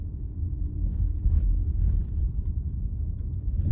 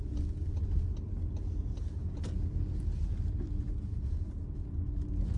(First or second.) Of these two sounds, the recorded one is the second